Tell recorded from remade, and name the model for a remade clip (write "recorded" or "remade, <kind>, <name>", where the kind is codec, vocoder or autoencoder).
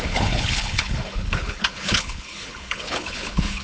remade, codec, HILCodec